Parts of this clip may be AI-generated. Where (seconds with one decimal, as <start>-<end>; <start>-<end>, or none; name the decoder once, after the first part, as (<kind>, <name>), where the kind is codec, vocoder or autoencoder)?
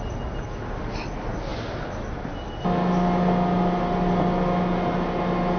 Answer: none